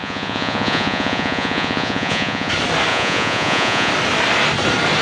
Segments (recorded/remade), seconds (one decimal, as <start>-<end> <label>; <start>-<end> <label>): 0.0-2.5 remade; 2.5-2.9 recorded; 2.9-3.9 remade; 3.9-5.0 recorded